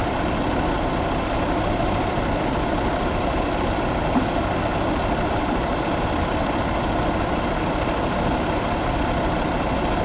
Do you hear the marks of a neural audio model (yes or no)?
yes